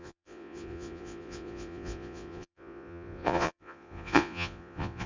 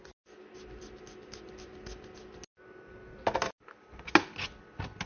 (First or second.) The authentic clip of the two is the second